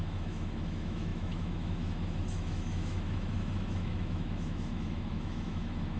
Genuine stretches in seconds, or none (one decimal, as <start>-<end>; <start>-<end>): none